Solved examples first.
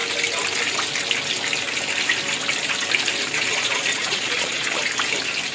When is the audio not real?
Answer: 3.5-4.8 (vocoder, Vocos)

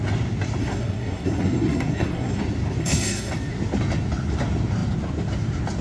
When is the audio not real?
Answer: 0.6-2.4 (codec, SNAC); 2.8-3.3

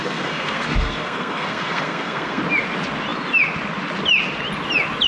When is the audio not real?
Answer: 0.0-2.4 (codec, SNAC)

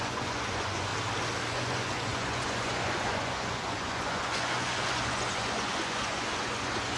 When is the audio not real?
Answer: 0.0-0.9 (vocoder, Vocos); 1.5-7.0